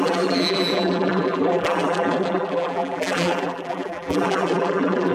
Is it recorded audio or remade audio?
remade